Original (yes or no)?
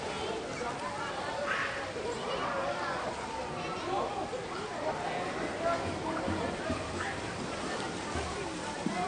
yes